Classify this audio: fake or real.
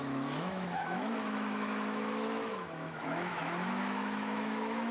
fake